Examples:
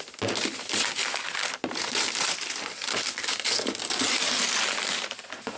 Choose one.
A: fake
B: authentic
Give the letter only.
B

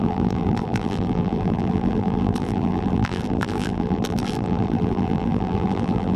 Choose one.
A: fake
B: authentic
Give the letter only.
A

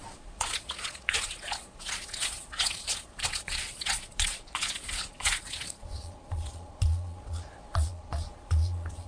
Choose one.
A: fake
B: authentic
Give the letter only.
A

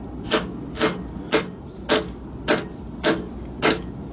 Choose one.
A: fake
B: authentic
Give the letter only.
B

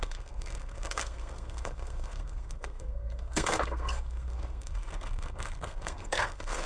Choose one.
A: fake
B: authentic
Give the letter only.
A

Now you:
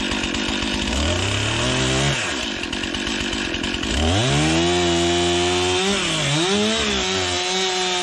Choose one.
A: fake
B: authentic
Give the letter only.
B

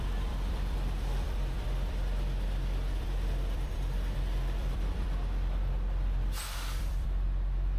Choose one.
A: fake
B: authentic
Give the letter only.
A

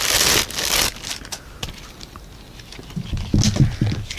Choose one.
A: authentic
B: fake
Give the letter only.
A